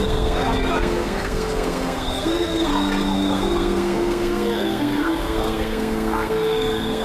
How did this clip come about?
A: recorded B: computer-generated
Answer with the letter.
B